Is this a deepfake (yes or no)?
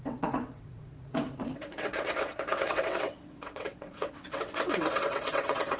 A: yes